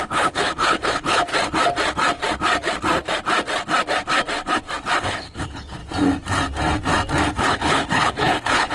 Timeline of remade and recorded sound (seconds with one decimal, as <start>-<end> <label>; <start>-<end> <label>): 0.0-1.3 remade; 1.3-5.0 recorded; 5.0-5.8 remade; 5.8-7.4 recorded; 7.4-8.7 remade